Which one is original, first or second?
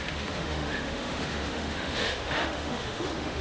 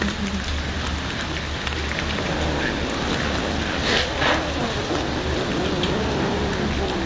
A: second